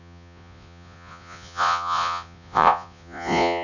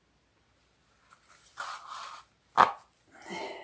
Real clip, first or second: second